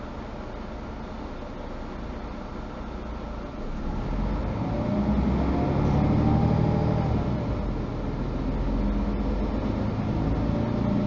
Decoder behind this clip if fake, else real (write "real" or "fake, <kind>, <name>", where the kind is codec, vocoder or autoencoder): real